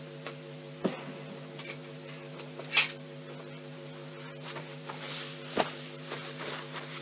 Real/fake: real